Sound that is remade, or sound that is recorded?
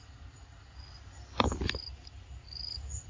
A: recorded